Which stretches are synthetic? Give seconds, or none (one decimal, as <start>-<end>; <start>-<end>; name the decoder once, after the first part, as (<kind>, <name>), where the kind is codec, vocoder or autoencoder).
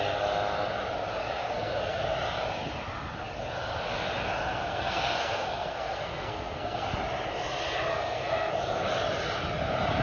1.4-2.0 (codec, SNAC); 4.5-6.9; 7.9-8.5